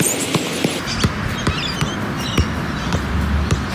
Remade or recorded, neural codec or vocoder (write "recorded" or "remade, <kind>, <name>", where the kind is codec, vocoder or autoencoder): recorded